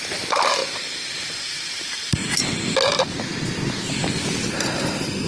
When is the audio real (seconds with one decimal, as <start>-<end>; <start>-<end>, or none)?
0.6-1.2; 2.2-3.0; 4.0-5.3